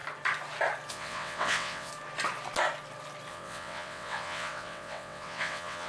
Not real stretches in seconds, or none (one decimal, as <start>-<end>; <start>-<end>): 0.9-1.9; 3.3-5.9